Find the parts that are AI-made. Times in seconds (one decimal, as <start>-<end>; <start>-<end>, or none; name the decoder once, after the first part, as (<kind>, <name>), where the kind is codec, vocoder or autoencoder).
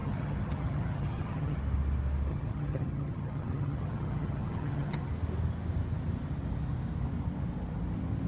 0.0-1.6 (vocoder, HiFi-GAN); 2.3-5.1